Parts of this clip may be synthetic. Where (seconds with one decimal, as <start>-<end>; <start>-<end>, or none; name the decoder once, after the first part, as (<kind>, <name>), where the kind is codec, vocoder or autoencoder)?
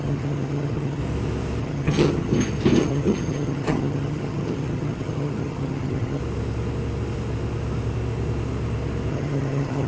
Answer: 0.0-1.0 (vocoder, HiFi-GAN); 1.6-2.3; 2.8-6.2; 9.1-9.9